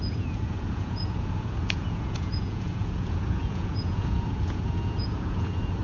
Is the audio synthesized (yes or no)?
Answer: yes